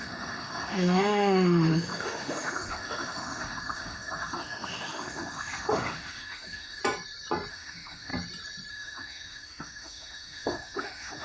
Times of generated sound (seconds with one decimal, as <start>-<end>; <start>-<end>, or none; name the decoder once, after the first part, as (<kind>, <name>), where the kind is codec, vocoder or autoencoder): 0.0-6.8 (autoencoder, DAC-VAE); 7.5-8.1; 8.7-11.2